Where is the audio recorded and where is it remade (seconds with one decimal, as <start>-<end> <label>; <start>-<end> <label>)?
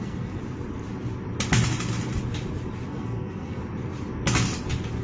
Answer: 0.0-0.4 remade; 0.4-2.9 recorded; 2.9-3.6 remade; 3.6-5.0 recorded